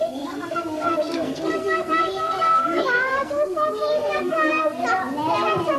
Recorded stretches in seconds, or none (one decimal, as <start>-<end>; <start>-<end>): 4.8-5.8